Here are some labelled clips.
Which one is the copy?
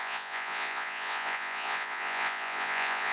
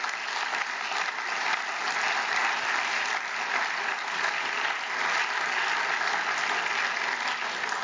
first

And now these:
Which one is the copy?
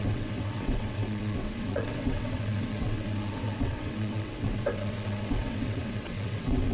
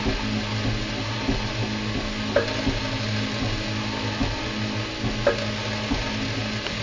first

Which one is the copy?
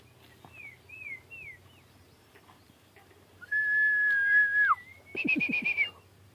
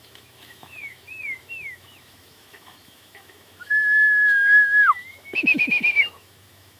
second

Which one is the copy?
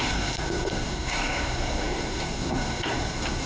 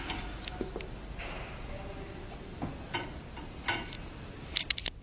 first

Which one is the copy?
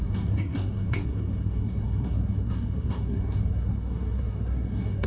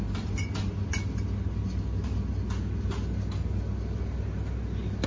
first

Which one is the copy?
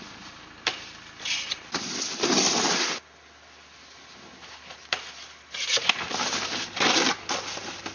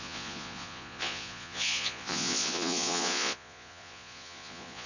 second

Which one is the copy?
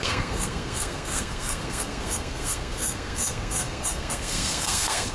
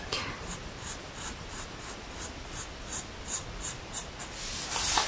first